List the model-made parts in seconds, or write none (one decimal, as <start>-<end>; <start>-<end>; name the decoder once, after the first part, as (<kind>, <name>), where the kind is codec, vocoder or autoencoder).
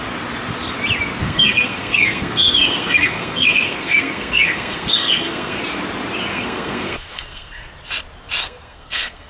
1.2-5.6 (codec, SNAC); 6.3-7.7; 8.4-9.3